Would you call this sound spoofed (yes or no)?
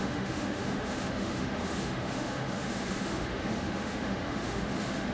yes